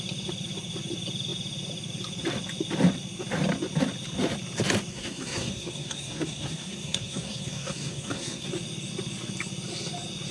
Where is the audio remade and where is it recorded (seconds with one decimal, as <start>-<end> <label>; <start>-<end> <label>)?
0.0-4.9 recorded; 4.9-8.5 remade; 8.5-10.3 recorded